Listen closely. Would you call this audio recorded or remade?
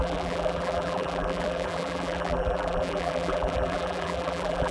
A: remade